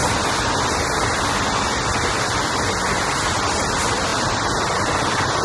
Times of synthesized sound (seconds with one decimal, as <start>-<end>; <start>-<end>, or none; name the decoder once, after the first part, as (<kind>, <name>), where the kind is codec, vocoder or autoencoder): 0.0-1.2 (vocoder, BigVGAN v2); 1.9-3.1; 4.1-5.4